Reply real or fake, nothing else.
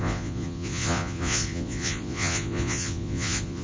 fake